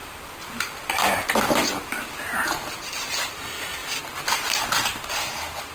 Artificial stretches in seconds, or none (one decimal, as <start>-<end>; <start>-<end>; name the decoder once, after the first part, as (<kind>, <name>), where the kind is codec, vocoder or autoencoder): 0.0-3.4 (vocoder, BigVGAN v2); 3.8-5.1